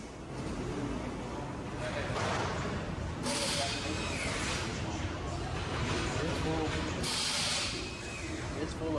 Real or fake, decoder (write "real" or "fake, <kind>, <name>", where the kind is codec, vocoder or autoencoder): real